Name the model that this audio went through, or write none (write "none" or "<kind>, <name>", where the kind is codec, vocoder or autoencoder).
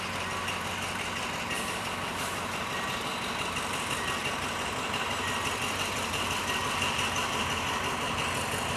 vocoder, BigVGAN v2